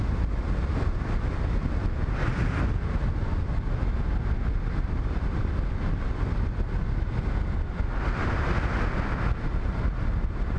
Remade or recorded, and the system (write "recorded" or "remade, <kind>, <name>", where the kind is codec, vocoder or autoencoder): recorded